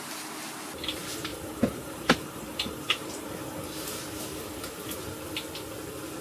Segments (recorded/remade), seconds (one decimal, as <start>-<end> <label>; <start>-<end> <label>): 0.0-1.3 recorded; 1.3-4.2 remade; 4.2-6.2 recorded